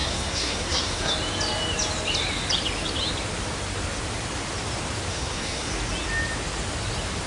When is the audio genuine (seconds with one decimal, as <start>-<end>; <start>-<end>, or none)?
1.1-5.1; 5.7-7.3